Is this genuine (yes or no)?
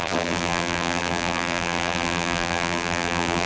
no